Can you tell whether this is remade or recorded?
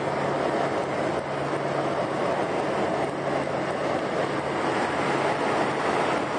recorded